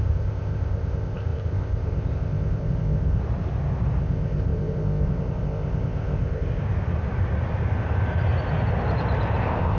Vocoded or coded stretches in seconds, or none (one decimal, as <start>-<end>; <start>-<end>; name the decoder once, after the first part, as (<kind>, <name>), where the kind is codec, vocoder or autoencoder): 0.0-3.2 (codec, ZipCodec); 4.0-6.6; 9.4-9.8